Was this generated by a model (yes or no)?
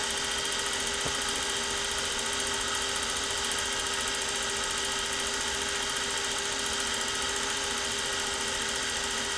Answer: no